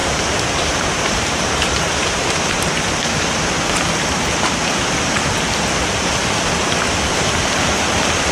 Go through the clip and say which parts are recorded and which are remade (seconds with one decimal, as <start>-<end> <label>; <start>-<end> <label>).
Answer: 0.0-2.7 remade; 2.7-8.3 recorded